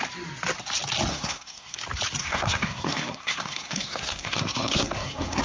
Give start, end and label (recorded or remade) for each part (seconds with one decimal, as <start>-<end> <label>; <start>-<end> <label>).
0.0-1.1 recorded; 1.1-1.8 remade; 1.8-2.2 recorded; 2.2-5.4 remade